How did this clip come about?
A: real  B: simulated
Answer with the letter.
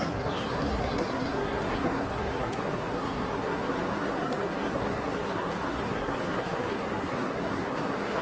B